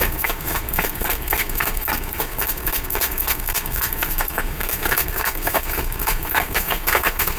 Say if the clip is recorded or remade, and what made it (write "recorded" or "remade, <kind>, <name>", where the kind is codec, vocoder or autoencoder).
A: remade, codec, SNAC